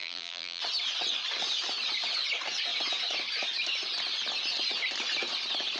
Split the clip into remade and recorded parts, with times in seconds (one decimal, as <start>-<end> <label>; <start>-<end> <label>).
0.0-0.6 remade; 0.6-5.8 recorded